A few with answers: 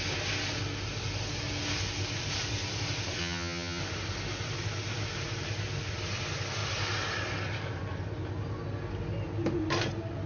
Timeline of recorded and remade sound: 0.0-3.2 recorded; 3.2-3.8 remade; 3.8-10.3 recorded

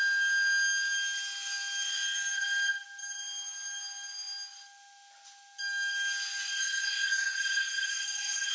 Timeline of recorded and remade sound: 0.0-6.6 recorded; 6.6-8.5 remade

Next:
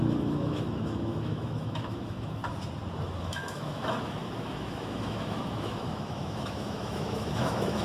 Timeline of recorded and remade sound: 0.0-2.4 remade; 2.4-3.2 recorded; 3.2-7.8 remade

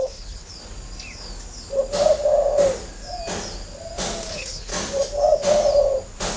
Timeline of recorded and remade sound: 0.0-0.5 remade; 0.5-4.3 recorded; 4.3-4.7 remade; 4.7-6.4 recorded

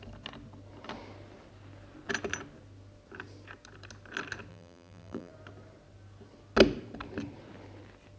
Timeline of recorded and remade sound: 0.0-4.5 recorded; 4.5-5.3 remade; 5.3-8.2 recorded